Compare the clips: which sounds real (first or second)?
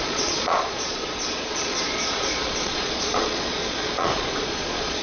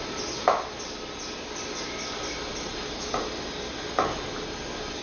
second